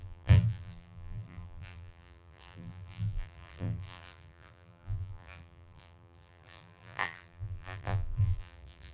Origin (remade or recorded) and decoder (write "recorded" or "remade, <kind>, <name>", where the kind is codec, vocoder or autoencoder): remade, vocoder, BigVGAN v2